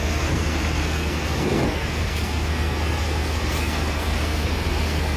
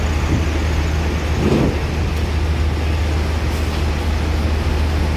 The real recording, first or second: second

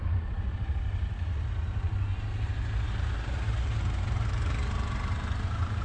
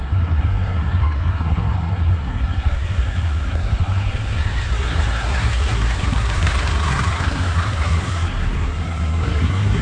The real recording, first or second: first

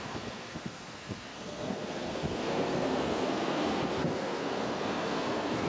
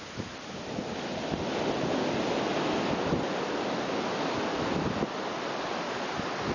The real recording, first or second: second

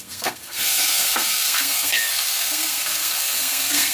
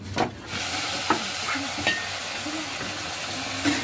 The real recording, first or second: second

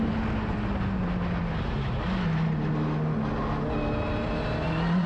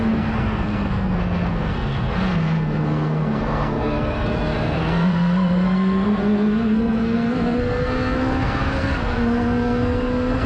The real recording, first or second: first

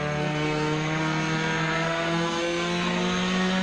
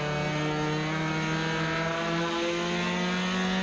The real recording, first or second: second